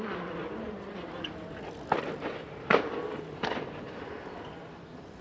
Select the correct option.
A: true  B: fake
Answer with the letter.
B